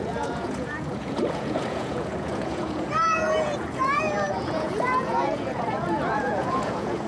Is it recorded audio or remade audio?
remade